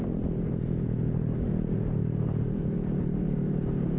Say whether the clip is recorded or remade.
remade